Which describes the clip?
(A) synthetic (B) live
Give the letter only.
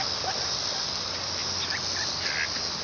B